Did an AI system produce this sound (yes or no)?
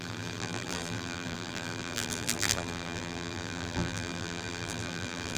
yes